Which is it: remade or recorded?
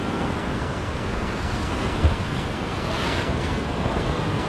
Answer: remade